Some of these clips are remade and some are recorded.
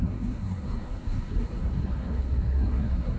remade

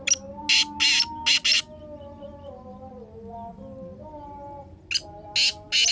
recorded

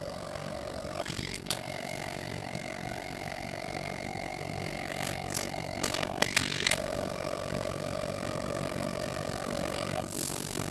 remade